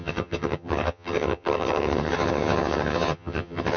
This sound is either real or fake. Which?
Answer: fake